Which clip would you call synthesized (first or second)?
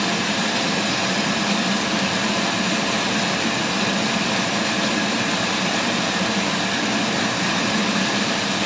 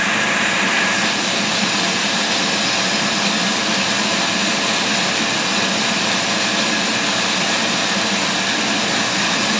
first